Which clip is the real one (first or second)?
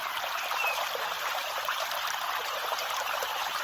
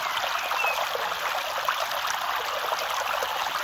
second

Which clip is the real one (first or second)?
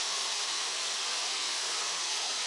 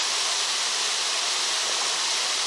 second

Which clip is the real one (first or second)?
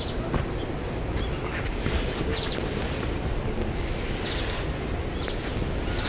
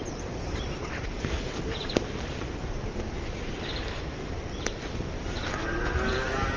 first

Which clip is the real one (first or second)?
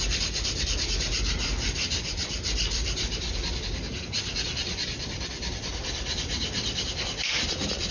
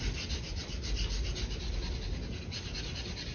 second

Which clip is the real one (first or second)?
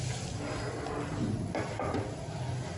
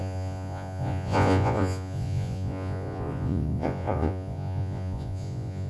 first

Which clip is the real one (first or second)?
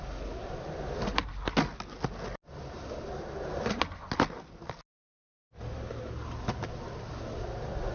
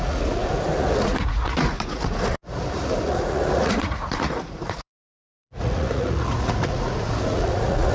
first